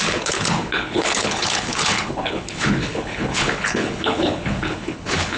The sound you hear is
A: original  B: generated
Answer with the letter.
B